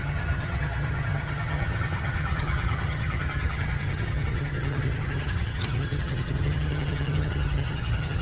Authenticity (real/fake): fake